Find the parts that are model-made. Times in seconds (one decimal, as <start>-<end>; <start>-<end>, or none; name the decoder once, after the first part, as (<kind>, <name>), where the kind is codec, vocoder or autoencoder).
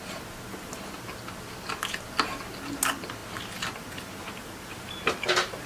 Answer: none